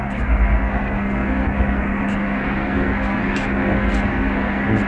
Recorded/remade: remade